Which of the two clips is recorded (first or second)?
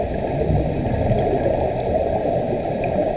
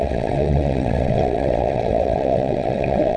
first